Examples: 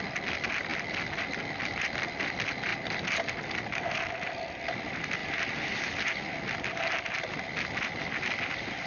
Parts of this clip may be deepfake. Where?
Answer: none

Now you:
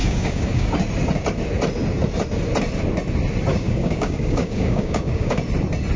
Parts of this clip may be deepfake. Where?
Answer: 0.0-0.7 (codec, DAC); 3.5-5.4

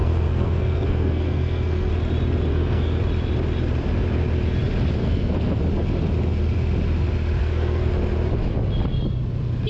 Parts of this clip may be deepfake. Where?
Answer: 0.0-1.9 (codec, SNAC); 2.5-3.0; 5.0-5.6; 7.4-7.9

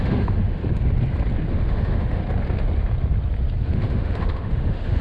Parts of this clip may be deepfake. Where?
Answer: 0.0-0.6 (autoencoder, DAC-VAE); 1.5-2.2; 3.6-5.0